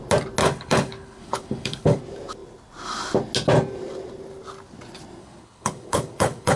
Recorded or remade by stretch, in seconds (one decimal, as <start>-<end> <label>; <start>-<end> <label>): 0.0-0.4 recorded; 0.4-2.0 remade; 2.0-5.2 recorded; 5.2-6.6 remade